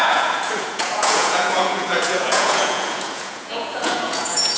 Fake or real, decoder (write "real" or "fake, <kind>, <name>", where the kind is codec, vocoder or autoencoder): fake, vocoder, Vocos